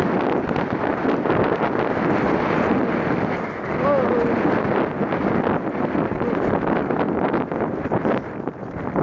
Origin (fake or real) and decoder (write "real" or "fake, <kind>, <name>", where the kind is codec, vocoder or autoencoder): real